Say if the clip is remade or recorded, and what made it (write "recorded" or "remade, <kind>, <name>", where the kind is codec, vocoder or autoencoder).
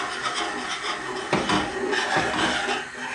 recorded